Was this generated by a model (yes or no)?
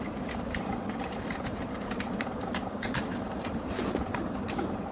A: yes